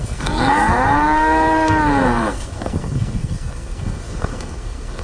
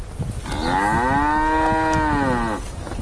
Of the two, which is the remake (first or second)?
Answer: first